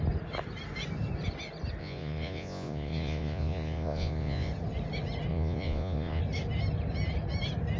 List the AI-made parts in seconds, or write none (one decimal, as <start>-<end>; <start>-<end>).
1.8-4.5; 5.3-6.2